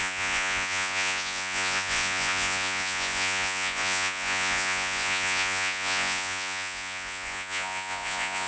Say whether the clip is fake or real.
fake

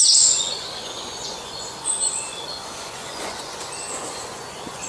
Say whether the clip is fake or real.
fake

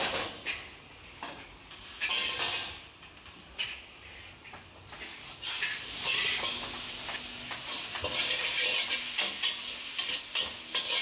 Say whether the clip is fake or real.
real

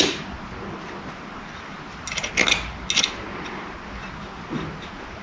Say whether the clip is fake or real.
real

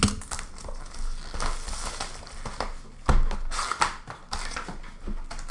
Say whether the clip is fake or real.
real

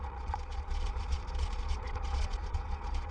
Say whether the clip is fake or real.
fake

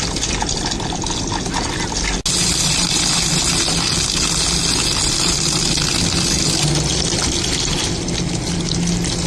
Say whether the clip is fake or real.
real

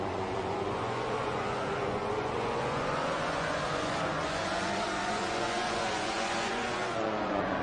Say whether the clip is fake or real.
fake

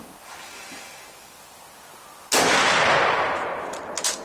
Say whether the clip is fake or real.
real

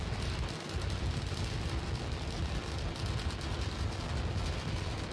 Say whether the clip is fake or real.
real